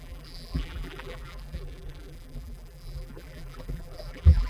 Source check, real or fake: fake